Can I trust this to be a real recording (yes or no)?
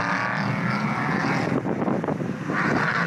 yes